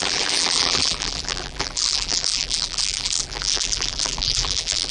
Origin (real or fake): fake